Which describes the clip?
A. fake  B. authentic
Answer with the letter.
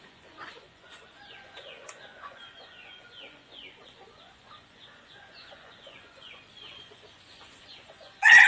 A